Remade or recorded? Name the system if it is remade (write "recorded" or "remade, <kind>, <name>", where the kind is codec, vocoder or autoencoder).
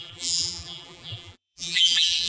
remade, vocoder, BigVGAN v2